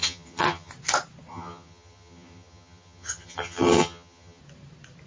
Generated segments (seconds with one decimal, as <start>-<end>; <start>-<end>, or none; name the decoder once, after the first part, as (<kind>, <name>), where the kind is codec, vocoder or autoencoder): 0.0-0.7 (vocoder, HiFi-GAN); 1.3-4.4